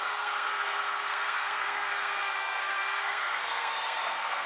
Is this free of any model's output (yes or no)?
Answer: no